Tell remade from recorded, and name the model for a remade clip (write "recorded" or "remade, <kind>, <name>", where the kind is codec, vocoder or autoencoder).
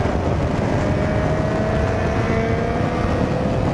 recorded